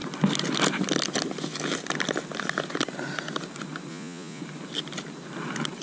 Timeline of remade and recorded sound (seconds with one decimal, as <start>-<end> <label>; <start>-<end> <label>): 0.0-3.9 recorded; 3.9-4.4 remade; 4.4-5.8 recorded